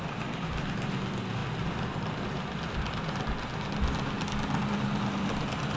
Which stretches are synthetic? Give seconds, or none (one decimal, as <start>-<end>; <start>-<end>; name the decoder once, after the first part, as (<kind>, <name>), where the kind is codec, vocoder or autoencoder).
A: none